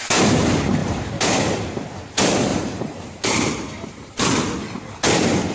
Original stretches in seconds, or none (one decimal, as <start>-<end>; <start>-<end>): 0.0-0.8; 1.4-2.5; 4.2-5.5